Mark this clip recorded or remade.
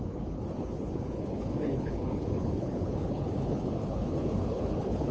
remade